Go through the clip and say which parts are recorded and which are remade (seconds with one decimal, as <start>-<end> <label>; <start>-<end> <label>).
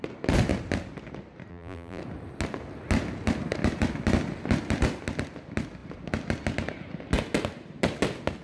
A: 0.0-1.5 recorded; 1.5-2.0 remade; 2.0-8.4 recorded